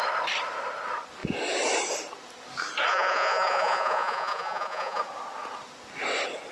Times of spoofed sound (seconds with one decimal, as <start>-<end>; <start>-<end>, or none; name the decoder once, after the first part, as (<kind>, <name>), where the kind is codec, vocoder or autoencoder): 2.9-5.0 (vocoder, Vocos)